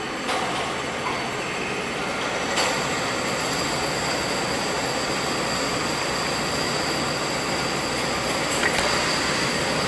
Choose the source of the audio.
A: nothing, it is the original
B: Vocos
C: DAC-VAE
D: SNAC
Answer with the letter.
A